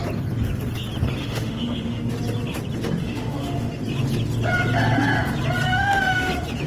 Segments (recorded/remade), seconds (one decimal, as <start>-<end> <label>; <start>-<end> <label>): 0.0-1.2 recorded; 1.2-2.1 remade; 2.1-3.0 recorded; 3.0-3.8 remade; 3.8-5.7 recorded; 5.7-6.3 remade; 6.3-6.7 recorded